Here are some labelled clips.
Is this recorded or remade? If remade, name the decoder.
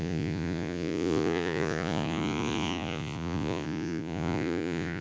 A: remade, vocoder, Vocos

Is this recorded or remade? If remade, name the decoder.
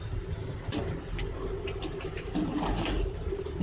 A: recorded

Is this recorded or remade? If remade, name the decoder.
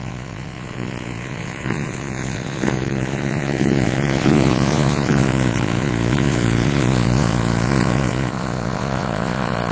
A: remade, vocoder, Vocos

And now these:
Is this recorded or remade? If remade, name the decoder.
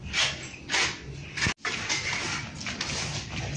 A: recorded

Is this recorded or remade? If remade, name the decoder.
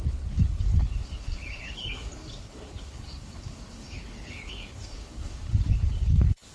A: remade, codec, HILCodec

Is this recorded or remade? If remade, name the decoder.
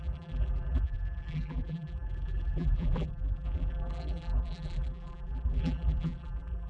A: remade, vocoder, BigVGAN v2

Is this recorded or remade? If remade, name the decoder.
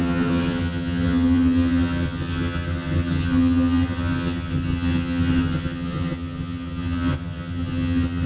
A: remade, vocoder, HiFi-GAN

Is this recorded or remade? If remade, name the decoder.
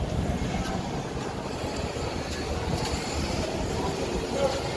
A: recorded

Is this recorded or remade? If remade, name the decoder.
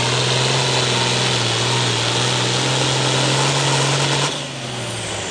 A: recorded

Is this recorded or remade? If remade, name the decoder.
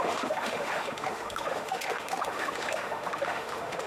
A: remade, autoencoder, DAC-VAE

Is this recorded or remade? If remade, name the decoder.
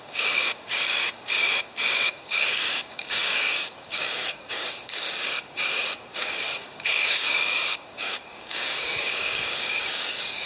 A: remade, codec, DAC